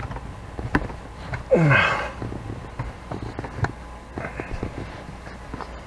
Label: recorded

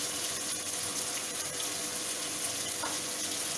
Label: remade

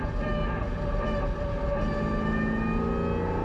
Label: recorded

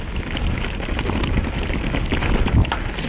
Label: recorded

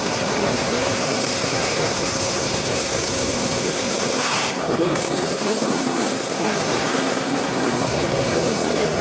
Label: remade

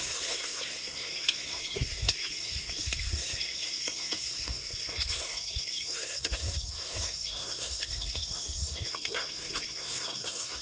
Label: remade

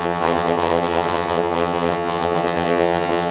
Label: remade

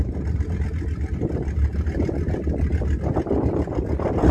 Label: recorded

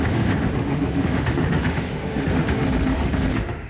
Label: remade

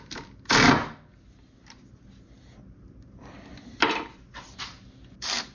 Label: recorded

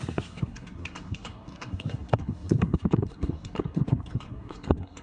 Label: remade